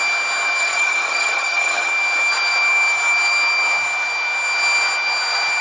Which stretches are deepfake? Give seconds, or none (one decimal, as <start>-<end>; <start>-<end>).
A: 0.6-1.9